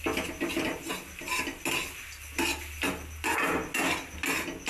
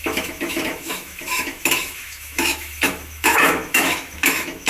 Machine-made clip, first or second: second